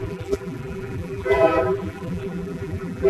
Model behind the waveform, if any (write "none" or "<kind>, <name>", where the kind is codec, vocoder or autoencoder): vocoder, BigVGAN v2